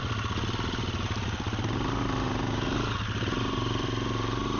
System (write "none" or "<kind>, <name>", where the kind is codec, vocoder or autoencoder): none